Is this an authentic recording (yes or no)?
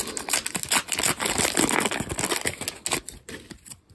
yes